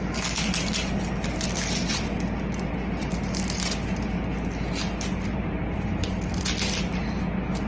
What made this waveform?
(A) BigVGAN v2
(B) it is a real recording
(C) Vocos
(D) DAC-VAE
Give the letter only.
B